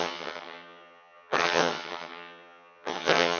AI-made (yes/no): yes